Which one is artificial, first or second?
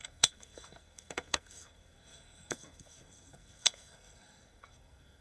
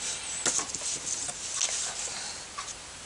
first